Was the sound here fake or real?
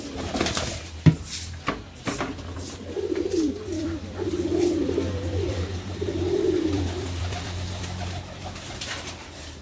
fake